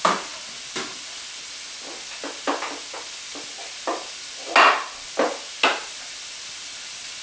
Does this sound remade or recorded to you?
recorded